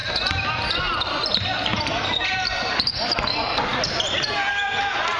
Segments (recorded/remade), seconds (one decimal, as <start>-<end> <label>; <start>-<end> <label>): 0.0-5.2 recorded